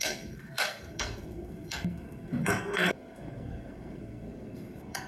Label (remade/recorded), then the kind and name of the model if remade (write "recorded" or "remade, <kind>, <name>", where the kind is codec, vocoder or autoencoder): remade, codec, SNAC